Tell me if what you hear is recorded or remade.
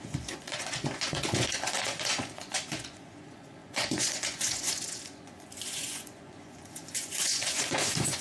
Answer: remade